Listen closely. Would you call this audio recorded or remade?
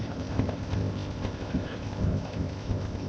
remade